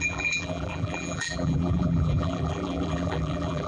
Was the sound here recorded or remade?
remade